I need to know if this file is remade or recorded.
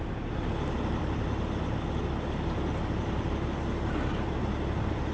recorded